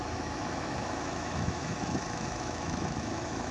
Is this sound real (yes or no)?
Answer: no